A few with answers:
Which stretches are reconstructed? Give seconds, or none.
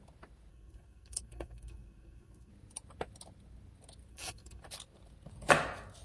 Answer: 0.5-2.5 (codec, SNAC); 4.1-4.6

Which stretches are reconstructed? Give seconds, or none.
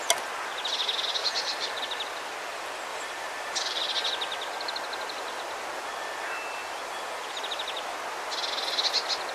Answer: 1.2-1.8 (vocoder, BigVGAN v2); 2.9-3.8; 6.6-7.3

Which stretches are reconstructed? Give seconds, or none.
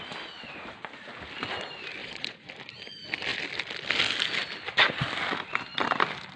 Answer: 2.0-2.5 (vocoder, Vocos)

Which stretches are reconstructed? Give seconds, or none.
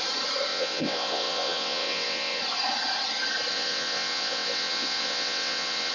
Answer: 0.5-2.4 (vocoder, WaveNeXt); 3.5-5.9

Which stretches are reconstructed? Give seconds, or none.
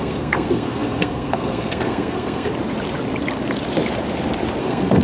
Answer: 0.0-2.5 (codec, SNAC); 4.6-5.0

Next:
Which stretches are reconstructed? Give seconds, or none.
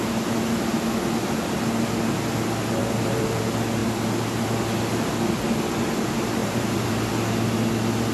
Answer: 2.8-3.4 (vocoder, BigVGAN v2); 6.4-6.9